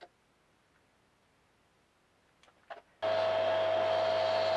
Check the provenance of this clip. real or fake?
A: real